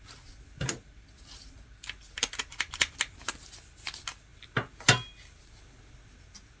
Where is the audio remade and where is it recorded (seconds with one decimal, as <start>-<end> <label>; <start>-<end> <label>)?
0.0-6.6 recorded